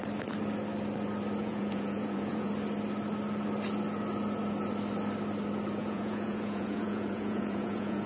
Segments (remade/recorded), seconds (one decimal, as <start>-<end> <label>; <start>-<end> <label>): 0.0-1.4 recorded; 1.4-2.5 remade; 2.5-5.8 recorded; 5.8-8.1 remade